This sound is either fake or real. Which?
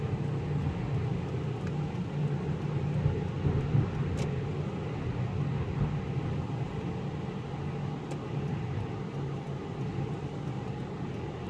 real